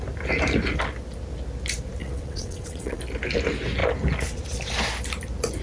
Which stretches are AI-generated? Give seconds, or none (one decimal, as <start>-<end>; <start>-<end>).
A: 2.0-3.0